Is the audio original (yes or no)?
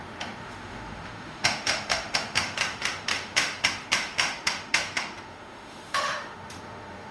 no